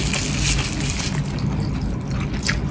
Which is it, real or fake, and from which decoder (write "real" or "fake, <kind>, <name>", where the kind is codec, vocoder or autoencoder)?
real